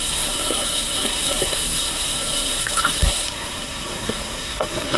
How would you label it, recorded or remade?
remade